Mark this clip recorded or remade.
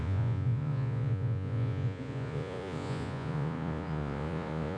remade